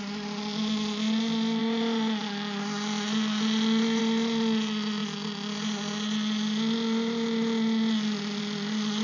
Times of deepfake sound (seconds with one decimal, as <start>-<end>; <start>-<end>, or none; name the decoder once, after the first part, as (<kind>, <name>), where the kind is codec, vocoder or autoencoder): none